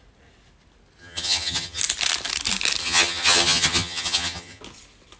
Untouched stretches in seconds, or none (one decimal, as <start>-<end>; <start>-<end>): 0.0-1.0; 1.8-2.8; 4.6-5.2